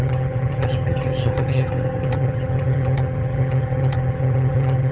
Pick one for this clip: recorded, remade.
remade